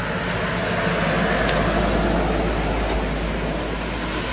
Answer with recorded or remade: recorded